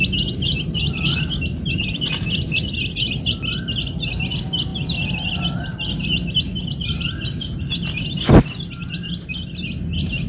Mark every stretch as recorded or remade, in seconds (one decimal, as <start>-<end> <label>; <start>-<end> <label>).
0.0-10.3 recorded